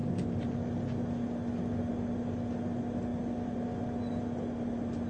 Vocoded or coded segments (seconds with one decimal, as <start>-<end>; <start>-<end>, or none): none